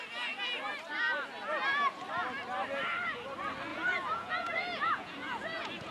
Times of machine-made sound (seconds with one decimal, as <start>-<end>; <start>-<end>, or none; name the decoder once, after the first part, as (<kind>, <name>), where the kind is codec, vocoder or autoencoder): 3.7-5.9 (vocoder, Vocos)